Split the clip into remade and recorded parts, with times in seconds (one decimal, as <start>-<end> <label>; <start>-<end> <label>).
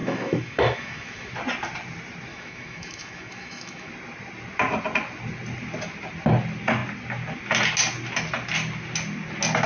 0.0-1.3 remade; 1.3-2.3 recorded; 2.3-3.9 remade; 3.9-9.7 recorded